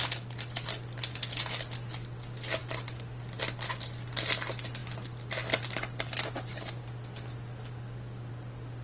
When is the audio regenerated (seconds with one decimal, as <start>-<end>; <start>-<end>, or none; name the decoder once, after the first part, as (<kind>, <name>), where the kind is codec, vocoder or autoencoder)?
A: none